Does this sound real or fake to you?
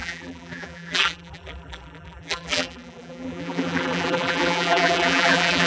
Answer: fake